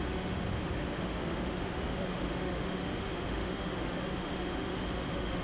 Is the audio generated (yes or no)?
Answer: yes